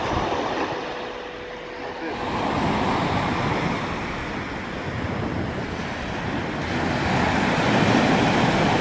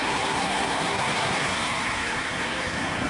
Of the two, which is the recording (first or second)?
first